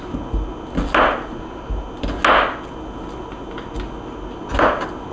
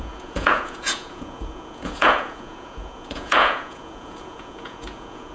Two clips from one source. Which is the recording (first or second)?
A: first